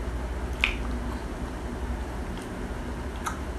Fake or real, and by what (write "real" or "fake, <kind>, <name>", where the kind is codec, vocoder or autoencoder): real